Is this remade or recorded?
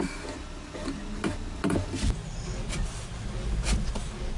recorded